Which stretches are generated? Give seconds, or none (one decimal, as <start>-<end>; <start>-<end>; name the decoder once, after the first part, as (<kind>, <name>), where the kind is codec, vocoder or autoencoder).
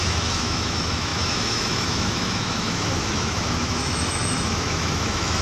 0.0-5.4 (autoencoder, DAC-VAE)